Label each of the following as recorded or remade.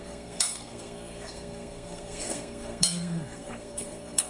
remade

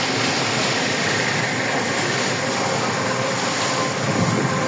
recorded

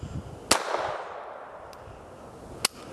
recorded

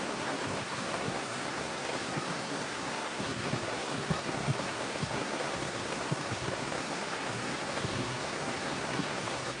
remade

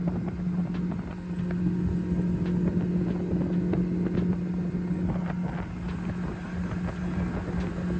recorded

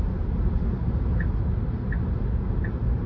recorded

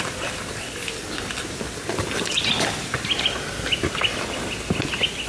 recorded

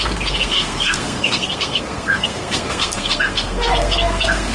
remade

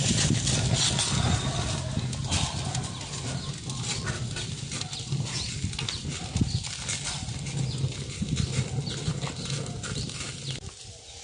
recorded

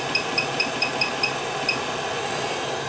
recorded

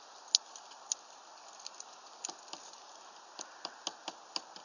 recorded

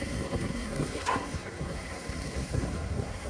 remade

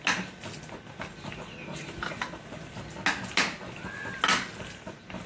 recorded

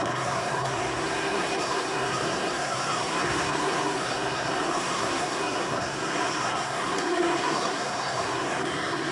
remade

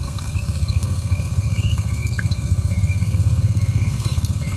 remade